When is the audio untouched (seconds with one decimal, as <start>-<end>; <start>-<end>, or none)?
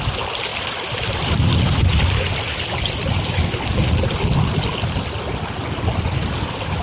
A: 0.0-0.5; 1.4-6.8